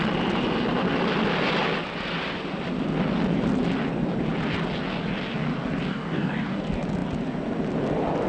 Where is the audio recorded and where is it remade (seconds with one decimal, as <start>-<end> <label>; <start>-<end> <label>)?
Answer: 0.0-5.9 recorded; 5.9-6.6 remade; 6.6-8.3 recorded